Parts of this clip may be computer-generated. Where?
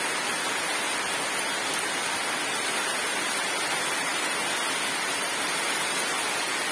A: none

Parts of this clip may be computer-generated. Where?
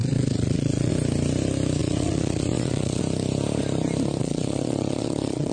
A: 0.0-0.9; 1.8-3.0; 4.2-5.5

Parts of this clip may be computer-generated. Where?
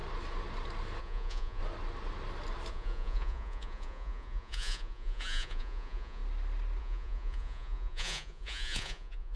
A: 1.0-1.6; 2.7-6.2; 6.8-9.4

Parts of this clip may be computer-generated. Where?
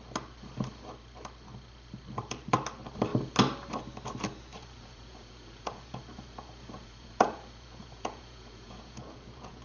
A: 4.5-9.6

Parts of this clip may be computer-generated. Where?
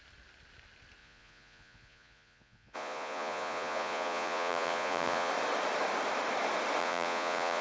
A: 1.0-5.3; 6.8-7.6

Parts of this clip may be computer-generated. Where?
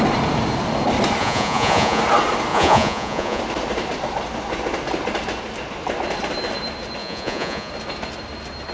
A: 1.2-2.0; 2.5-3.4; 7.0-7.7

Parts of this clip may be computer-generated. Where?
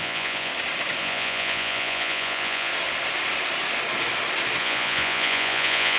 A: 0.0-0.5; 1.0-2.7; 4.6-6.0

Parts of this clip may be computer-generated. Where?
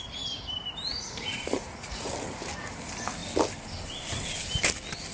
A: 0.9-2.1